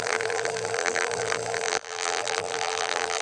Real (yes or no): no